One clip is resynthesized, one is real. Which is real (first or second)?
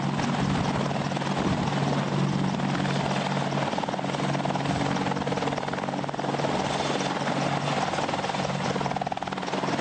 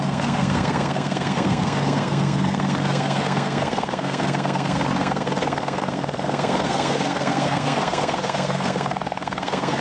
first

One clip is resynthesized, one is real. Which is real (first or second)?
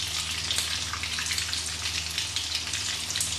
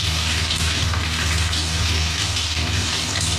first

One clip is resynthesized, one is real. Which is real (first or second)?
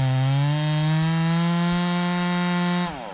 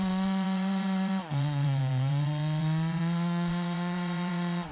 first